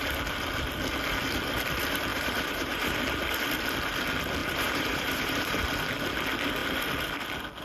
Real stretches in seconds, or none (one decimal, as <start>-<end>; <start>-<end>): 0.0-2.1; 3.0-4.4; 5.6-7.6